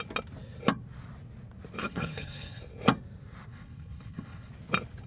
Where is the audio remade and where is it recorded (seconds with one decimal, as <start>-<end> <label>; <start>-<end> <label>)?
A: 0.0-1.8 recorded; 1.8-2.6 remade; 2.6-3.5 recorded; 3.5-4.5 remade; 4.5-5.1 recorded